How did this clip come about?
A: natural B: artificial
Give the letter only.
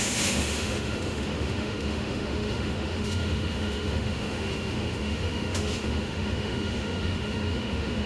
B